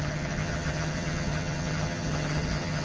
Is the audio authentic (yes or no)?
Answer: no